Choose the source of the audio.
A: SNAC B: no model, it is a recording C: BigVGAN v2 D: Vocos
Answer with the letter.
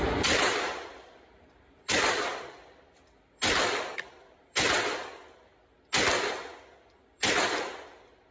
B